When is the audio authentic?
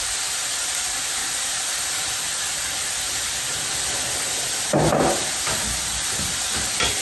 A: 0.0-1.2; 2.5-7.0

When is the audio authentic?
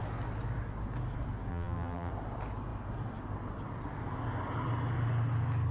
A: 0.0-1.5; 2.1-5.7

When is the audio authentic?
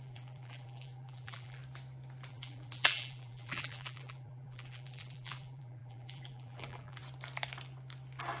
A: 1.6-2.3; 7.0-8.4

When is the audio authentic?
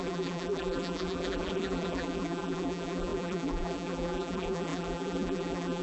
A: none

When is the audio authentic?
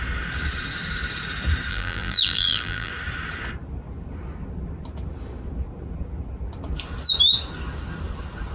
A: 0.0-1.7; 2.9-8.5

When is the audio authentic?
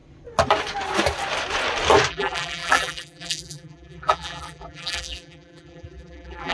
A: 0.0-2.1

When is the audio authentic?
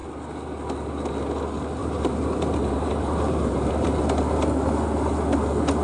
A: 0.0-1.8; 4.0-5.8